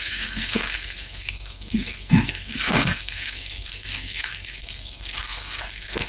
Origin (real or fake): fake